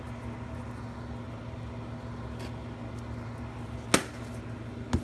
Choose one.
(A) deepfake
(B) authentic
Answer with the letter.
B